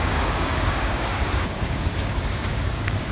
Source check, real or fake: fake